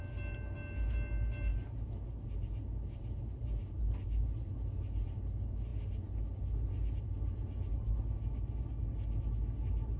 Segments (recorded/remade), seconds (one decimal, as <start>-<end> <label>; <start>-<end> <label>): 0.0-10.0 recorded